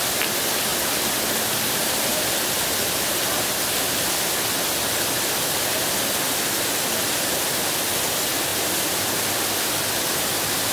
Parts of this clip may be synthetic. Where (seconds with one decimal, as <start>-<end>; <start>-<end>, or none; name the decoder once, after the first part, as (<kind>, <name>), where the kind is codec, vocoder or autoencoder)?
2.1-3.2 (vocoder, BigVGAN v2); 8.5-9.1